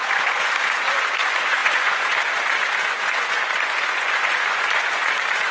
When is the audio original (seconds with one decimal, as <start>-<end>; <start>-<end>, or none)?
none